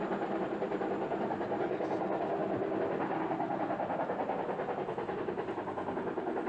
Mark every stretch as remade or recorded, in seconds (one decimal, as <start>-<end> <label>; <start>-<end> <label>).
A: 0.0-6.5 recorded